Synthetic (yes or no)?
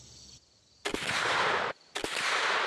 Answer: yes